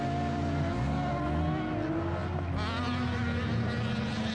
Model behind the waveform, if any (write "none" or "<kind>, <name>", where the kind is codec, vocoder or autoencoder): none